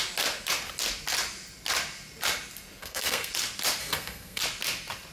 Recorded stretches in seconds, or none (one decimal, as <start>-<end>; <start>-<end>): 0.0-2.8; 3.3-3.8; 4.4-5.1